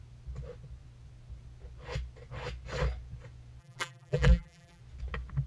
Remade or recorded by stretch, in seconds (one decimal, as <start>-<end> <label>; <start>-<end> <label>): 0.0-3.6 recorded; 3.6-4.8 remade; 4.8-5.5 recorded